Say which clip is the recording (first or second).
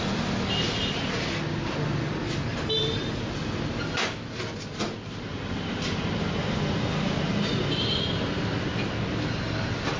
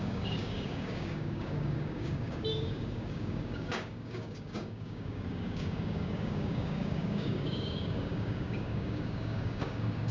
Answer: first